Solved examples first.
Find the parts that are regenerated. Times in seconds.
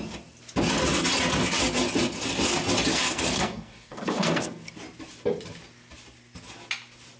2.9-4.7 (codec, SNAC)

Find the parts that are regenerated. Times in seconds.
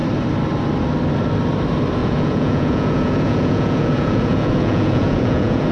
2.0-5.7 (vocoder, Vocos)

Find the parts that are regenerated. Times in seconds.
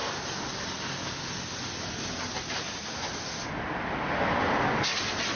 none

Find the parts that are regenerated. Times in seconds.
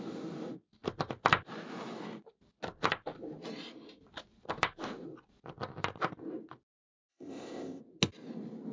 7.1-7.8 (codec, ZipCodec)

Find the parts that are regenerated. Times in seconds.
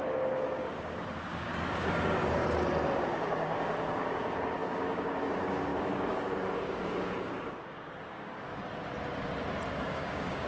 0.0-2.4 (codec, DAC); 3.0-8.6; 9.7-10.5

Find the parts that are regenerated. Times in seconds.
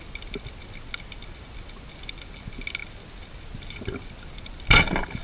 none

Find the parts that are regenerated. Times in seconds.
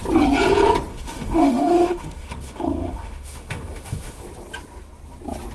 0.9-4.2 (autoencoder, DAC-VAE)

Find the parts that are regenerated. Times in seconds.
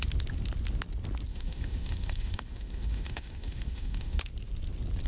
1.3-4.2 (autoencoder, DAC-VAE)